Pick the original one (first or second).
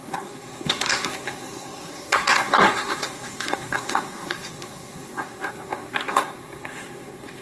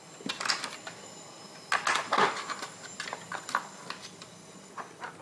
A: second